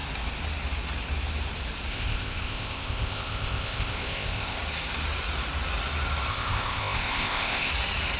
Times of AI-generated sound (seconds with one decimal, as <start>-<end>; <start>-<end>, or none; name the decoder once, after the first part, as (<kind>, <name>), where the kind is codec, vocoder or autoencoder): 1.9-4.6 (codec, ZipCodec); 6.3-7.7